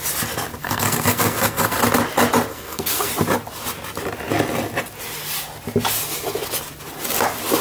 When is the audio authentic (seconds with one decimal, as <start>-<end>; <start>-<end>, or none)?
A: 0.0-0.6; 1.8-2.5; 3.1-7.6